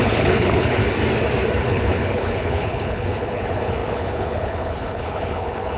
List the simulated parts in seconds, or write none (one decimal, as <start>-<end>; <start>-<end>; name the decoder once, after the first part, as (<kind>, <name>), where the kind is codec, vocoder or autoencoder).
0.0-0.8 (codec, HILCodec); 1.6-5.8